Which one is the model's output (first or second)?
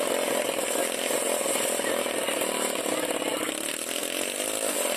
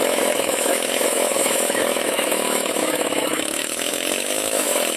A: second